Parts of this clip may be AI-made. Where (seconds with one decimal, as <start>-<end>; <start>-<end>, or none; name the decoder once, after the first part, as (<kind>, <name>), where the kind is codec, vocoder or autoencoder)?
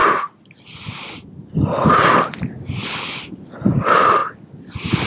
none